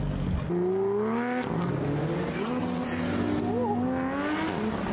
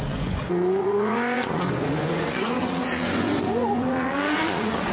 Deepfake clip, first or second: second